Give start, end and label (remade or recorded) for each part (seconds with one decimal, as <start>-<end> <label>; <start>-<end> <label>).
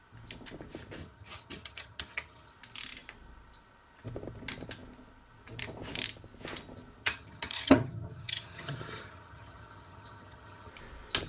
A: 0.0-1.0 recorded; 1.0-2.5 remade; 2.5-7.0 recorded; 7.0-10.7 remade; 10.7-11.3 recorded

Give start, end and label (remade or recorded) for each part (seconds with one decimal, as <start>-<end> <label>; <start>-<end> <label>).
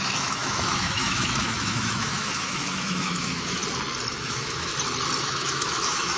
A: 0.0-3.6 remade; 3.6-4.2 recorded; 4.2-4.7 remade; 4.7-5.2 recorded; 5.2-6.2 remade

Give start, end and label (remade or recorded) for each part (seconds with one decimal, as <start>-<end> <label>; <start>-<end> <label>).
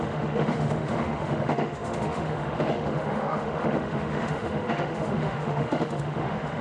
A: 0.0-6.6 remade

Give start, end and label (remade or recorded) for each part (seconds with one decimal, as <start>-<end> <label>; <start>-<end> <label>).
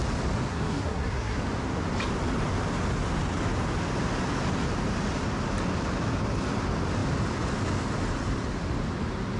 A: 0.0-0.5 recorded; 0.5-1.4 remade; 1.4-9.4 recorded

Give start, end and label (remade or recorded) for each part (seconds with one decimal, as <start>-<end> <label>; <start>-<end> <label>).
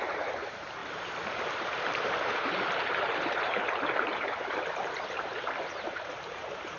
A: 0.0-0.8 remade; 0.8-1.6 recorded; 1.6-6.8 remade